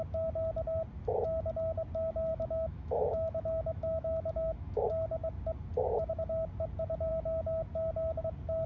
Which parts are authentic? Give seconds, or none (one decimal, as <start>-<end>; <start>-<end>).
0.0-2.3; 4.8-8.7